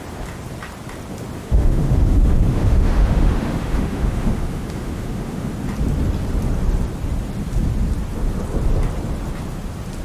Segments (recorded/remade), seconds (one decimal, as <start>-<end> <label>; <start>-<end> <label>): 0.0-1.4 recorded; 1.4-5.5 remade; 5.5-10.0 recorded